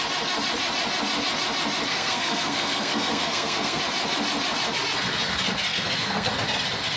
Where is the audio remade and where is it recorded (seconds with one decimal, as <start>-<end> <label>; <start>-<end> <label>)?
0.0-1.9 recorded; 1.9-3.8 remade; 3.8-5.7 recorded; 5.7-6.3 remade; 6.3-7.0 recorded